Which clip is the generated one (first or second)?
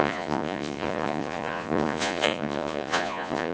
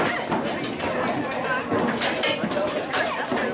first